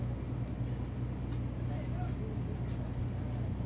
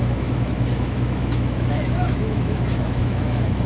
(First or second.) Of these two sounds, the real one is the first